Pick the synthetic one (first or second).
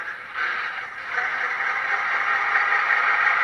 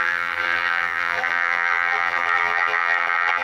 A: second